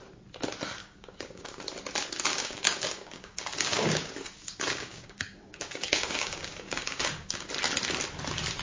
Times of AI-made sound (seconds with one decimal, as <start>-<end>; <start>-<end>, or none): 0.8-1.6; 2.3-7.5